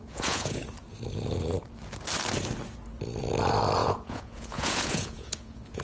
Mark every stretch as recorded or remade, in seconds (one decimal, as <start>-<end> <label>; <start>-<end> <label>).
0.0-0.6 remade; 0.6-3.8 recorded; 3.8-5.8 remade